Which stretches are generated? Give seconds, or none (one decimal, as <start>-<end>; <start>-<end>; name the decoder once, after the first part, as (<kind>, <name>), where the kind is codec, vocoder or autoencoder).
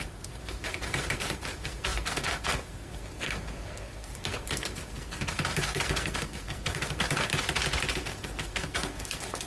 0.0-7.3 (codec, SNAC); 7.9-9.5